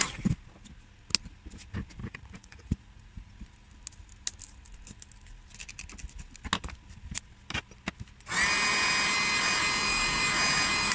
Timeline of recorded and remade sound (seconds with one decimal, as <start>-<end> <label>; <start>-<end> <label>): 0.0-2.0 recorded; 2.0-3.3 remade; 3.3-10.9 recorded